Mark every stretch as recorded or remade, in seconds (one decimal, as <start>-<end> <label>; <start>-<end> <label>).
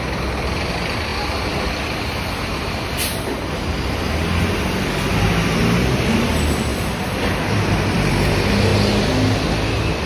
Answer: 0.0-10.1 recorded